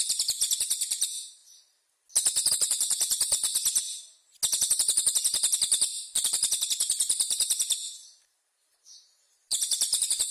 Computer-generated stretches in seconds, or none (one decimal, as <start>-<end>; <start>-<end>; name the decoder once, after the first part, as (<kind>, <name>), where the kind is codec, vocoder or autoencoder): 0.0-1.4 (vocoder, BigVGAN v2); 2.5-3.5; 6.1-10.3